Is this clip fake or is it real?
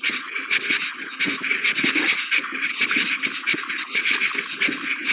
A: real